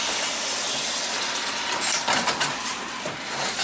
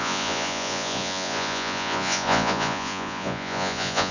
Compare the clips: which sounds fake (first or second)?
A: second